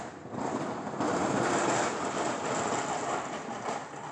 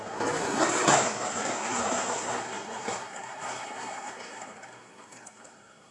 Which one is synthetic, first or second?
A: second